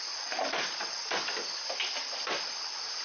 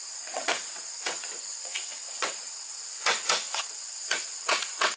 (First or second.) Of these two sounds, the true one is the first